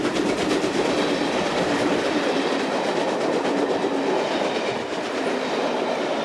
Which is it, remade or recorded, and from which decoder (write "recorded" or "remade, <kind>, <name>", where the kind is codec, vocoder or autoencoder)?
recorded